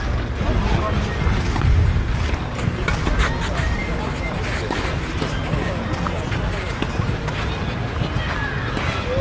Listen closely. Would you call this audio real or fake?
real